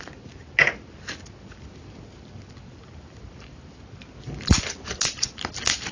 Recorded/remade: recorded